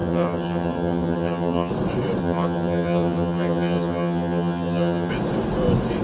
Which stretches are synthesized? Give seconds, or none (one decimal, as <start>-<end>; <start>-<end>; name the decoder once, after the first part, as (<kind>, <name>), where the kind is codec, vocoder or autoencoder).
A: 0.0-1.7 (vocoder, HiFi-GAN); 2.2-5.1